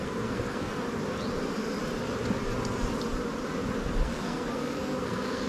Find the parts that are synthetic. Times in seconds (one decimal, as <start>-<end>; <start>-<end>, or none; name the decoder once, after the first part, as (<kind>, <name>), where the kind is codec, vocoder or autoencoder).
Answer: 0.0-0.7 (codec, SNAC); 4.0-5.5